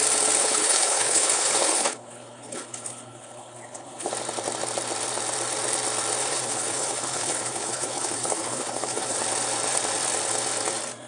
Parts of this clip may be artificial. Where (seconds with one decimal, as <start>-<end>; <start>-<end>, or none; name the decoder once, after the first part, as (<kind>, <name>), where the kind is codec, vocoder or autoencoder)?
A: 0.4-4.1 (codec, HILCodec); 6.2-9.2